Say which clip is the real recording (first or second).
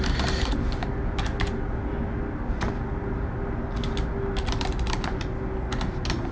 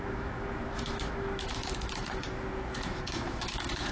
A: first